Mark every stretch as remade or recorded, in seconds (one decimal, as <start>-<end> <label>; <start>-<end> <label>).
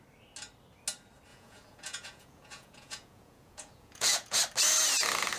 0.0-1.3 recorded; 1.3-4.4 remade; 4.4-5.4 recorded